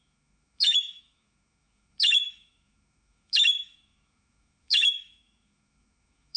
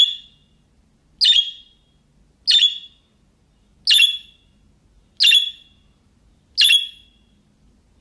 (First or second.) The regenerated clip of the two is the first